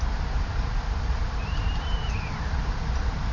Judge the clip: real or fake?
fake